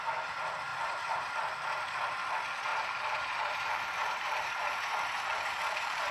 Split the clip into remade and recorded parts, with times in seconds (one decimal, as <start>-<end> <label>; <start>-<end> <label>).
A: 0.0-0.7 recorded; 0.7-1.3 remade; 1.3-2.7 recorded; 2.7-6.1 remade